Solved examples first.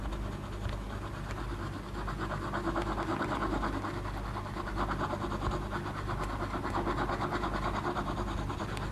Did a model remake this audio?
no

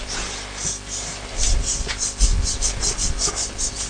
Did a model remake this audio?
no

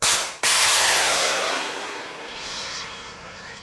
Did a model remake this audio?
yes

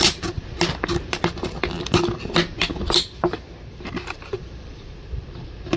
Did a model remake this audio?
no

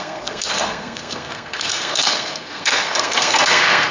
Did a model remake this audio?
yes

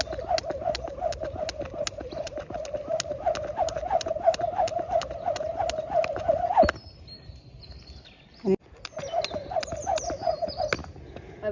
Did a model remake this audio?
no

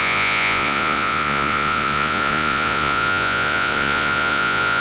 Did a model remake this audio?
yes